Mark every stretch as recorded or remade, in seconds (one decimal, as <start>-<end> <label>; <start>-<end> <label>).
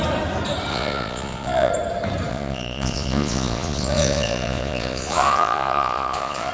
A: 0.0-0.7 recorded; 0.7-1.7 remade; 1.7-2.3 recorded; 2.3-6.5 remade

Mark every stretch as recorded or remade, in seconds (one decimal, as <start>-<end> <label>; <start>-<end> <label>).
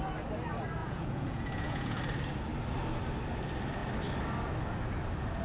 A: 0.0-0.8 recorded; 0.8-2.0 remade; 2.0-5.4 recorded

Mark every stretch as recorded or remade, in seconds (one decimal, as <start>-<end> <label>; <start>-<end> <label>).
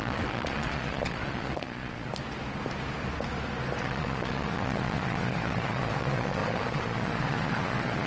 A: 0.0-2.1 remade; 2.1-3.8 recorded; 3.8-8.1 remade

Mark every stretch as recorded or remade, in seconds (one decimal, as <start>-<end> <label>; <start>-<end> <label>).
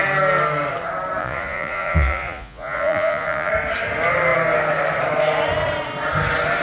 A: 0.0-1.2 recorded; 1.2-3.5 remade; 3.5-6.6 recorded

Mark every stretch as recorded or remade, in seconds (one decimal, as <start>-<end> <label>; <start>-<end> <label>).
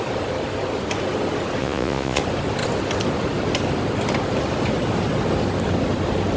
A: 0.0-1.6 recorded; 1.6-2.2 remade; 2.2-6.4 recorded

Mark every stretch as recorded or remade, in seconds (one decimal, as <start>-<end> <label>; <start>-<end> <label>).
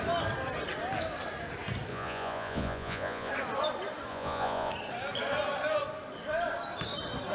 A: 0.0-1.9 recorded; 1.9-3.3 remade; 3.3-4.1 recorded; 4.1-4.7 remade; 4.7-7.3 recorded